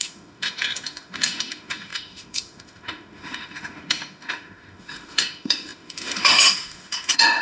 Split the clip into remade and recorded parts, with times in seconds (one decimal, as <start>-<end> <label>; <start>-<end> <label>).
0.0-7.4 remade